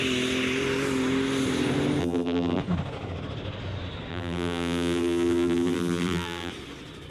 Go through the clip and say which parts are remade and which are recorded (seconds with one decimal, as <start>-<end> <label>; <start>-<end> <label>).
0.0-2.0 recorded; 2.0-2.6 remade; 2.6-4.1 recorded; 4.1-6.5 remade; 6.5-7.1 recorded